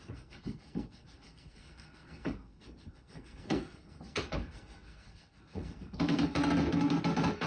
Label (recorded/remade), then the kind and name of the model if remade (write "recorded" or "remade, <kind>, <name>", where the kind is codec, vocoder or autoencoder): remade, codec, SNAC